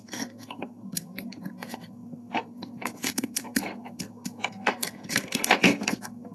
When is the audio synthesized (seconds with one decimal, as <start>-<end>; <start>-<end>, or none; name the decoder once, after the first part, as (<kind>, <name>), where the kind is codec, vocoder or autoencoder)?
0.0-6.3 (codec, SNAC)

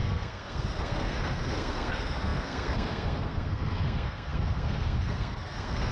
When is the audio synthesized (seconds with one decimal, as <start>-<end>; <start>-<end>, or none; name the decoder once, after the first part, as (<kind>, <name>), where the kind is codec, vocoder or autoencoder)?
0.0-5.9 (codec, SNAC)